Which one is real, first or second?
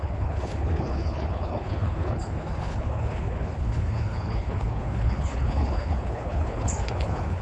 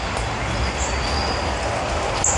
second